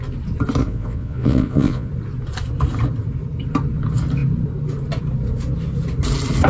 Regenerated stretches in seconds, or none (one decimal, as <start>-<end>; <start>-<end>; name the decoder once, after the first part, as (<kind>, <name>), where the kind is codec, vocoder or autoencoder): 0.6-1.9 (vocoder, Vocos)